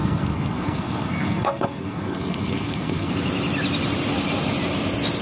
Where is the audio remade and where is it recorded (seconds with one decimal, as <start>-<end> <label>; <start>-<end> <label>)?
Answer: 0.0-3.1 remade; 3.1-5.2 recorded